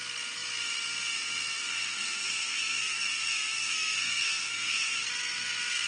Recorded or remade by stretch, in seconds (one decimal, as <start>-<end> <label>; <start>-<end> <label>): 0.0-1.7 recorded; 1.7-3.2 remade; 3.2-3.6 recorded; 3.6-5.1 remade; 5.1-5.9 recorded

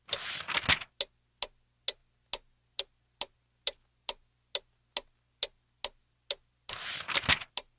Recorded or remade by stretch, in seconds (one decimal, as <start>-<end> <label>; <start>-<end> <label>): 0.0-7.8 recorded

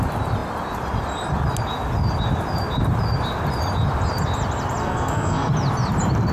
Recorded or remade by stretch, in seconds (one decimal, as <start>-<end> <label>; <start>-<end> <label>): 0.0-4.8 recorded; 4.8-5.5 remade; 5.5-6.3 recorded

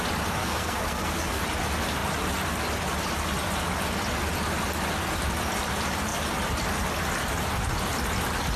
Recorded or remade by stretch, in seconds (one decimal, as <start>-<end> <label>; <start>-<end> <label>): 0.0-0.4 recorded; 0.4-1.4 remade; 1.4-8.6 recorded

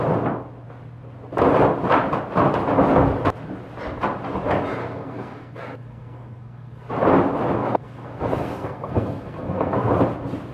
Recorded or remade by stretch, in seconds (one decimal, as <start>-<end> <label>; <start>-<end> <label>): 0.0-4.8 recorded; 4.8-6.9 remade; 6.9-7.6 recorded; 7.6-9.9 remade; 9.9-10.5 recorded